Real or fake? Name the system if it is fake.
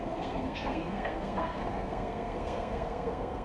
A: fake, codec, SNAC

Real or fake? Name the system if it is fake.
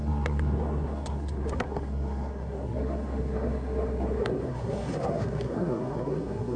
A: fake, codec, SNAC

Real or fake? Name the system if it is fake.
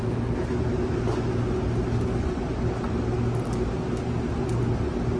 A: real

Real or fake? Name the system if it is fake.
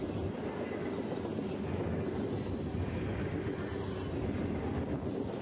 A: real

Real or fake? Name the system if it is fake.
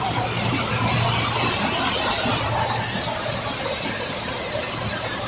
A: real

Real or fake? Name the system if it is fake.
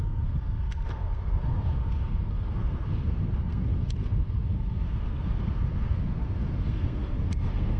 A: fake, codec, SNAC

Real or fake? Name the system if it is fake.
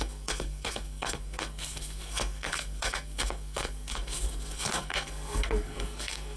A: fake, codec, SNAC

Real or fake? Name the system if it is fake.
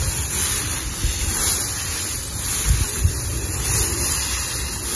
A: real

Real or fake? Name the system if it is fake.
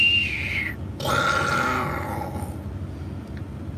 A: real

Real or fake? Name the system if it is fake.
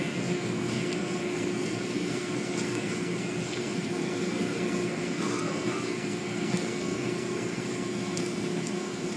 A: fake, codec, SNAC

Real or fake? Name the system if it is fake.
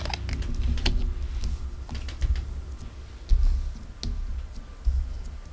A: real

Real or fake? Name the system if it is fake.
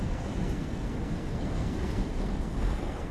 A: fake, codec, SNAC